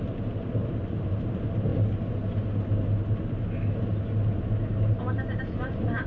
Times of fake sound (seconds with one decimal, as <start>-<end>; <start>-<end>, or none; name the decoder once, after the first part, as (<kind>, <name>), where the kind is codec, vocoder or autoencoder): 0.0-0.6 (vocoder, BigVGAN v2); 1.1-1.7; 5.4-6.1